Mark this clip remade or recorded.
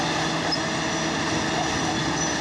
recorded